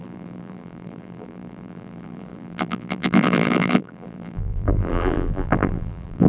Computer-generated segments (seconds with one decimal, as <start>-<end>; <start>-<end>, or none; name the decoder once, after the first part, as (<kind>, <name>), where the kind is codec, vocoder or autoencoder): 0.0-6.3 (vocoder, BigVGAN v2)